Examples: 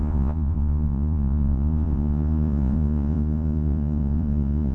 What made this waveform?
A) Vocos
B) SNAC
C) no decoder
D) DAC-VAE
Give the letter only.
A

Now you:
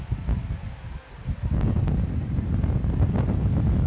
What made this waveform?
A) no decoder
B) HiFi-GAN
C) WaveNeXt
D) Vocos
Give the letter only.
A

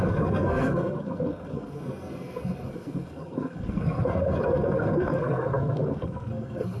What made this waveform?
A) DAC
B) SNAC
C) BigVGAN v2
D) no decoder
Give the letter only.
B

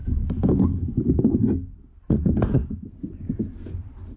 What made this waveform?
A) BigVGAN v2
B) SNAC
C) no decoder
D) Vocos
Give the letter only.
C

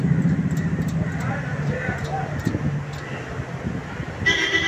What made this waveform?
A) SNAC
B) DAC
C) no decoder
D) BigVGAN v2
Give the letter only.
C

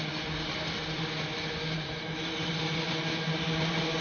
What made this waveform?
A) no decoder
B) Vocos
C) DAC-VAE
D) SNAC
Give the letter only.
A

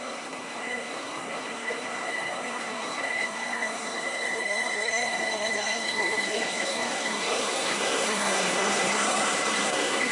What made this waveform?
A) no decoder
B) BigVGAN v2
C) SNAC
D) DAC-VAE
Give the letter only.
C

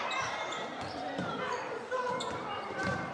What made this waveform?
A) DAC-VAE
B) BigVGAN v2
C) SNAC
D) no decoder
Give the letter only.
B